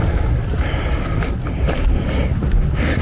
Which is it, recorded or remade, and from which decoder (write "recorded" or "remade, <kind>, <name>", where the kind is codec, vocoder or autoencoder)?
recorded